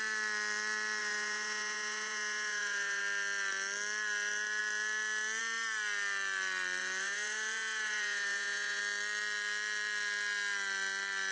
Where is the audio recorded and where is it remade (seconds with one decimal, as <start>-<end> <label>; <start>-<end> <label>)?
0.0-1.0 recorded; 1.0-3.0 remade; 3.0-6.8 recorded; 6.8-8.8 remade; 8.8-11.3 recorded